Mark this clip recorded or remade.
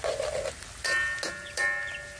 recorded